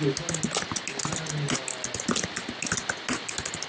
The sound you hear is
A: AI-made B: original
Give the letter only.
B